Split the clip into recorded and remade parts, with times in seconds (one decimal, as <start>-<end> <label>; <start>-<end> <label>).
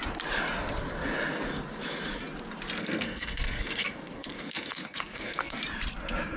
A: 0.0-2.8 recorded; 2.8-5.6 remade; 5.6-6.4 recorded